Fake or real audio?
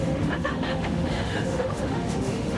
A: fake